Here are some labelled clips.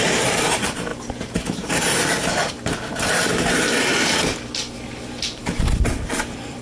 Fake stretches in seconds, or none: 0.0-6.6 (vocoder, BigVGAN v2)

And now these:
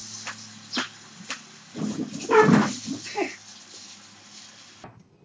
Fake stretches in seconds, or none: none

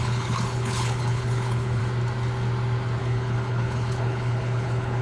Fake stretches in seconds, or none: 0.0-1.8 (codec, HILCodec); 3.0-5.0

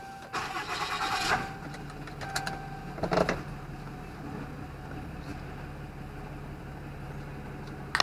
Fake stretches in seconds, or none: none

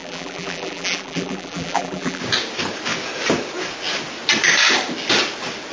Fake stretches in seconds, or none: 0.0-2.2 (vocoder, BigVGAN v2)